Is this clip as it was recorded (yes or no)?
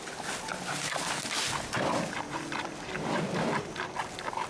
yes